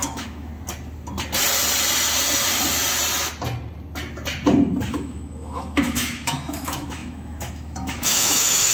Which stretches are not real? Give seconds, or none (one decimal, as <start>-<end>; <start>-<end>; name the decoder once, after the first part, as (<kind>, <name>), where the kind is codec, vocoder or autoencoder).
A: 0.0-0.5 (autoencoder, DAC-VAE); 4.9-8.7